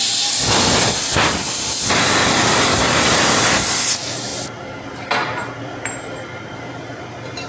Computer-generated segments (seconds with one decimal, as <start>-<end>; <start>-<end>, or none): none